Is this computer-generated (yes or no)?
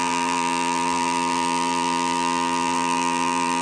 yes